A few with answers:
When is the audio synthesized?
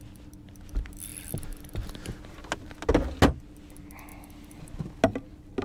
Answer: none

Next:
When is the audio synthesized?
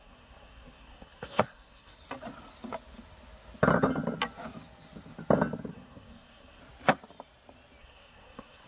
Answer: 0.0-1.9 (codec, SNAC); 5.7-6.6; 7.8-8.7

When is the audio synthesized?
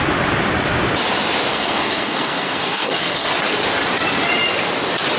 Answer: 1.5-3.3 (codec, SNAC)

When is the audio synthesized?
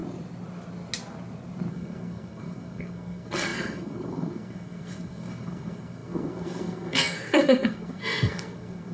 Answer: 1.7-8.9 (codec, SNAC)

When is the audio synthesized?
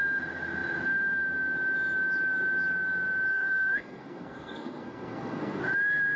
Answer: 3.3-5.6 (codec, SNAC)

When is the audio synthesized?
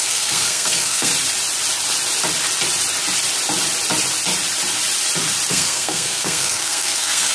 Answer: 0.0-1.1 (codec, SNAC); 5.5-7.3